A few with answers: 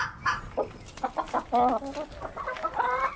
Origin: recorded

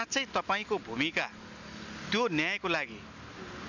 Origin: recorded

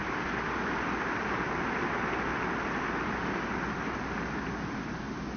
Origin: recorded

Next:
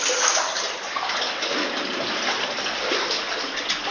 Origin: recorded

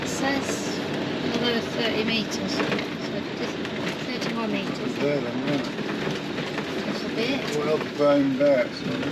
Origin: recorded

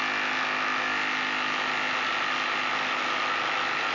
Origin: recorded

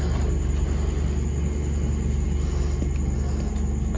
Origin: recorded